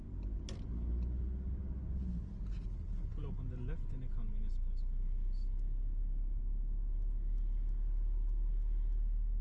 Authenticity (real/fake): real